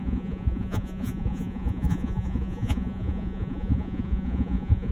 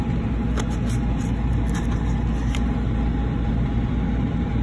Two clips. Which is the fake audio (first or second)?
first